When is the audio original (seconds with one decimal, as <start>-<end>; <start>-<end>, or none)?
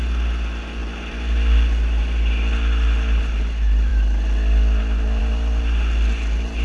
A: 0.0-6.6